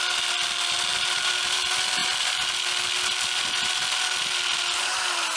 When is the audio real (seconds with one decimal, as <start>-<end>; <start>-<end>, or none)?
0.0-0.9; 1.6-5.4